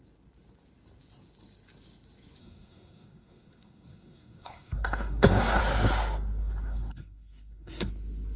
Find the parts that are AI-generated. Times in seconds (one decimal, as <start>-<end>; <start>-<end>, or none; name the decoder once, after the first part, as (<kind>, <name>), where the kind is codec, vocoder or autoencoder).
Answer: 2.4-5.6 (codec, SNAC); 6.4-7.9